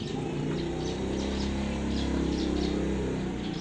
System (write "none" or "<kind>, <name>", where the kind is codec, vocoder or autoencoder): none